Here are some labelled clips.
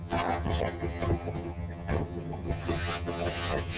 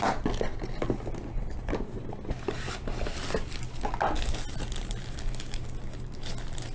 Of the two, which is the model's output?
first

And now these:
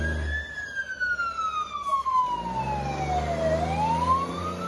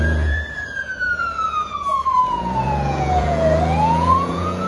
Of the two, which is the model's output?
second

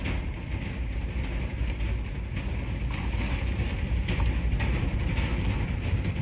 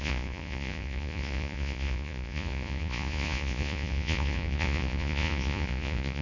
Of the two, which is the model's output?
second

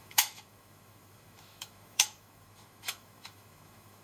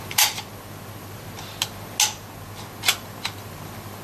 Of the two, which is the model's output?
first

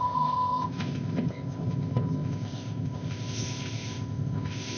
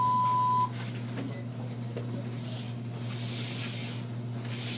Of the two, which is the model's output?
first